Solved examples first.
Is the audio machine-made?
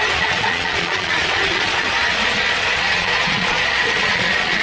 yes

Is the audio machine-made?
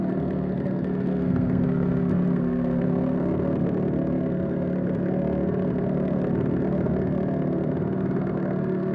yes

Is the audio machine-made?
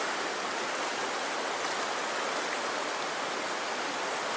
no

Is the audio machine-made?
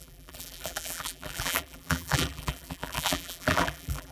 yes